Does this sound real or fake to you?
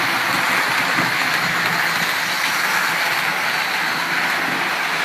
real